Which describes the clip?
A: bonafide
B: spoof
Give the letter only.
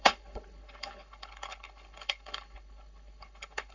B